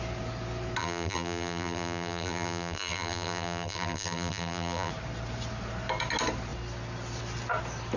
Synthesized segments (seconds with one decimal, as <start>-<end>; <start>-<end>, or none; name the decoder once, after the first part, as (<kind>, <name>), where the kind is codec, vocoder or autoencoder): 0.8-4.9 (vocoder, BigVGAN v2)